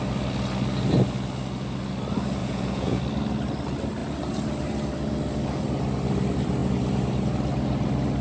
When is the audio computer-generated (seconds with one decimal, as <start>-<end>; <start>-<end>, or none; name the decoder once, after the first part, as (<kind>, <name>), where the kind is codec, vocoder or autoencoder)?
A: 2.4-3.0 (vocoder, Vocos)